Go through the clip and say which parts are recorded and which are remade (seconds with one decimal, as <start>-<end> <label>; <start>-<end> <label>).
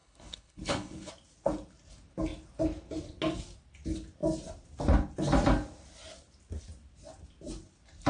0.0-1.1 remade; 1.1-8.1 recorded